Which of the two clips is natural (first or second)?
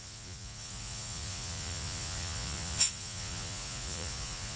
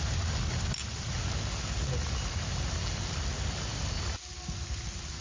second